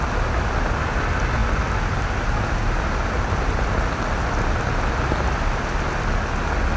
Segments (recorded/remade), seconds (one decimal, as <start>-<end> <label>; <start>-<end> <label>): 0.0-6.8 recorded